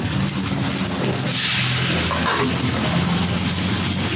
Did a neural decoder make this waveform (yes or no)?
no